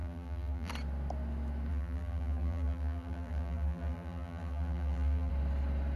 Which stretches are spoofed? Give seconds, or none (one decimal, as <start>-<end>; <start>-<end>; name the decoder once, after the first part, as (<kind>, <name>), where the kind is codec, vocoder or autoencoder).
0.0-0.7 (vocoder, BigVGAN v2); 1.7-5.3